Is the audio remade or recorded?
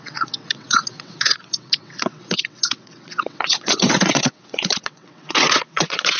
remade